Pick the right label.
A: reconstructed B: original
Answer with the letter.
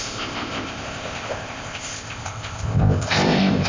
A